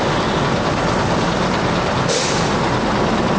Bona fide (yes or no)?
yes